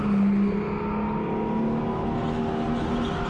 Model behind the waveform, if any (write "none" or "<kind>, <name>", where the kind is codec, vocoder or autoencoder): none